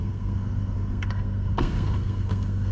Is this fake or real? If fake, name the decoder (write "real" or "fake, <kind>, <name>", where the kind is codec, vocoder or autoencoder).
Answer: fake, codec, SNAC